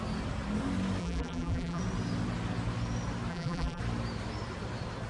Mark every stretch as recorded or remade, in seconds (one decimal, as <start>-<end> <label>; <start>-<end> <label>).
0.0-1.0 recorded; 1.0-1.8 remade; 1.8-3.3 recorded; 3.3-3.8 remade; 3.8-5.1 recorded

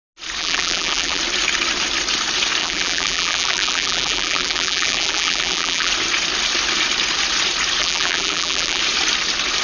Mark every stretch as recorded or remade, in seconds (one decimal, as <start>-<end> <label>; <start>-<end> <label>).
0.0-0.4 recorded; 0.4-1.2 remade; 1.2-2.6 recorded; 2.6-5.9 remade; 5.9-7.8 recorded; 7.8-8.8 remade; 8.8-9.6 recorded

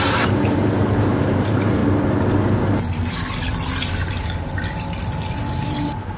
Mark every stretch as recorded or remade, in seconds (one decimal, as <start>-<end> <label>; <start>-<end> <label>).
0.0-1.8 remade; 1.8-5.5 recorded; 5.5-6.2 remade